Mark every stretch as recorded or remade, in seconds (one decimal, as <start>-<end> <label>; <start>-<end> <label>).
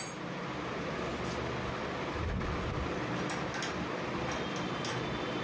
0.0-5.4 recorded